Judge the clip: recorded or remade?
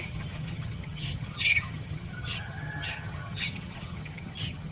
remade